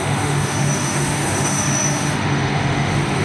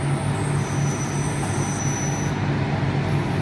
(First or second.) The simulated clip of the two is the first